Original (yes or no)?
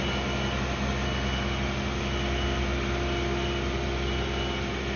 yes